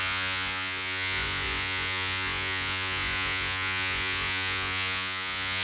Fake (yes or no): yes